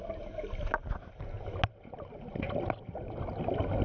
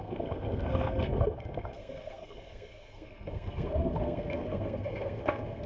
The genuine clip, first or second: first